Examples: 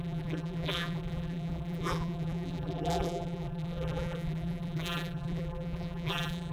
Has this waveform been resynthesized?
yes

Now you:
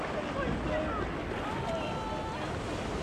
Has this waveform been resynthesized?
no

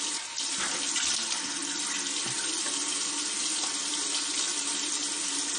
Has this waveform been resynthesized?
no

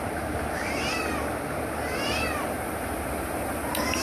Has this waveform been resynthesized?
no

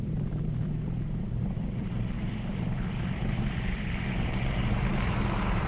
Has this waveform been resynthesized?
yes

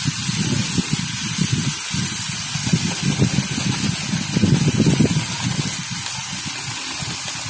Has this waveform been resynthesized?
no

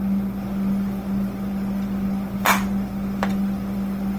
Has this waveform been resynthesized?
yes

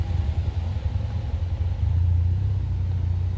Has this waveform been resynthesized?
no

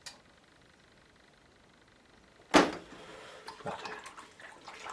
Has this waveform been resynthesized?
no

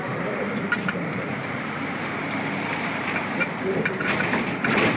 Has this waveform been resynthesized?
yes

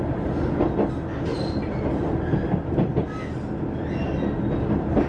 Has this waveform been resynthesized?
no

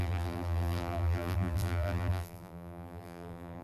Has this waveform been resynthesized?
yes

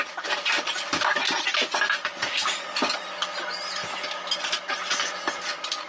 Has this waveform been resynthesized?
no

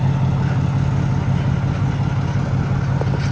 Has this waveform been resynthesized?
no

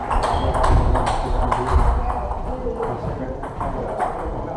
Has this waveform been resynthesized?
yes